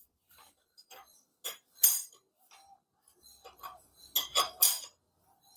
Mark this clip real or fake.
real